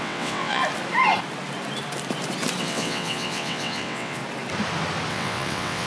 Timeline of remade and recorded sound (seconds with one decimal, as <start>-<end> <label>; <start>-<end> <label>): 0.0-0.6 remade; 0.6-2.6 recorded; 2.6-4.2 remade; 4.2-5.1 recorded; 5.1-5.9 remade